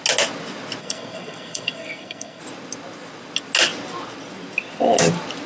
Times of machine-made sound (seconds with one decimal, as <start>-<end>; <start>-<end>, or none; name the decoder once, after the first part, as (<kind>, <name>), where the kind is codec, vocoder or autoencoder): 0.8-2.4 (codec, SNAC)